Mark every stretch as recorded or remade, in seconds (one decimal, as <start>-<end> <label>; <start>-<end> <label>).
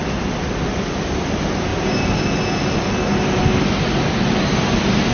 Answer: 0.0-5.1 recorded